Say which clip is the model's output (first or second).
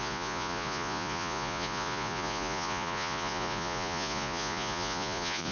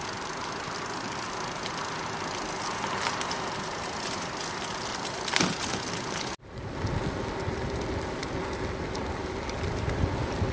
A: first